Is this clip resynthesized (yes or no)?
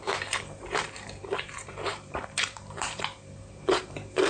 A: yes